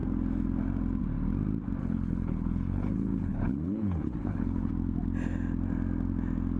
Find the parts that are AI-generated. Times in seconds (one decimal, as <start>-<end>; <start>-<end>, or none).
1.8-4.7